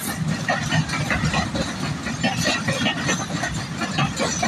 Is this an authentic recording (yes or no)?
yes